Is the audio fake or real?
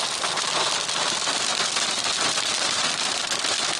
real